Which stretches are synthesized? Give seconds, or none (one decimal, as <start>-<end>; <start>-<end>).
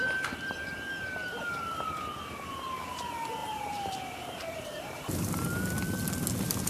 3.4-5.3